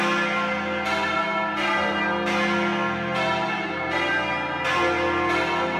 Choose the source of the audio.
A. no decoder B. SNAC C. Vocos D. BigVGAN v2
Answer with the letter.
A